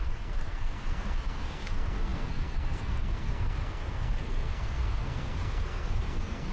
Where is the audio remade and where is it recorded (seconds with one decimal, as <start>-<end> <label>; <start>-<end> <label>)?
0.0-6.5 remade